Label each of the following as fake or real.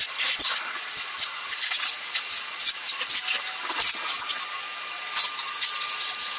real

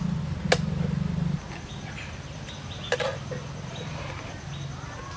real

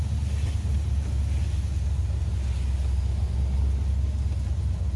real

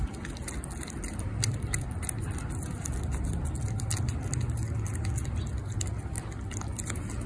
real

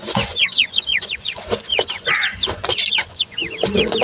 fake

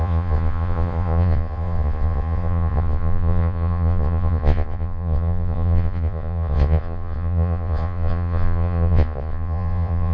fake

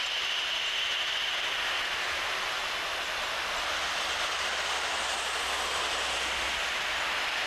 real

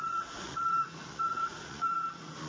fake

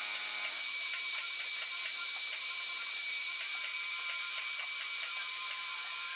fake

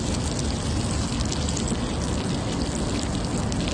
real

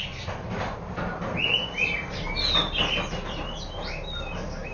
real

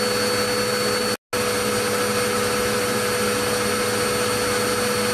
real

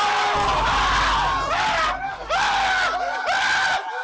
real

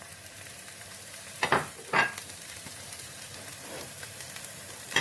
fake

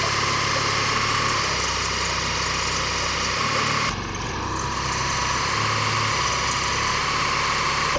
real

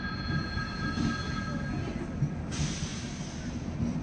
real